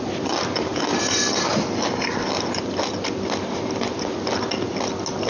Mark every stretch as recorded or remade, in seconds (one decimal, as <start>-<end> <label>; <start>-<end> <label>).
0.0-5.3 recorded